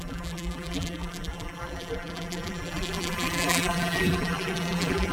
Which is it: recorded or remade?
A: remade